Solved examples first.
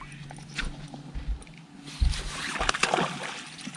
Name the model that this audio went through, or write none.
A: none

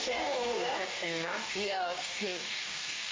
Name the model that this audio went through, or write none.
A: codec, DAC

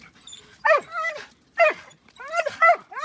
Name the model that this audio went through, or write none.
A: none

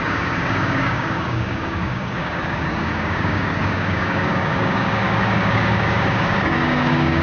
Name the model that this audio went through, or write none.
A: codec, DAC